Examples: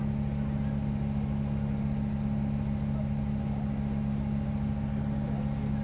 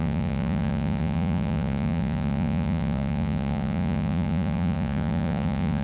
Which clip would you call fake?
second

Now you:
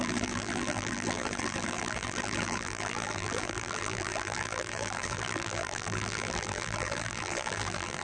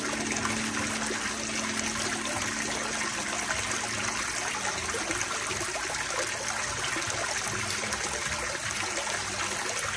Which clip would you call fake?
first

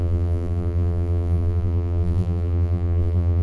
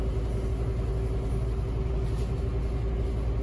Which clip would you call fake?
first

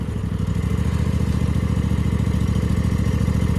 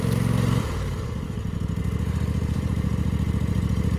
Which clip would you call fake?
second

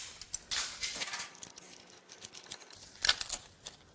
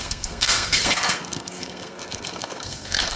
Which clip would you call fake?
second